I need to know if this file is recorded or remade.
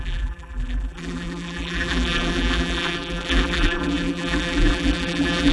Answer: remade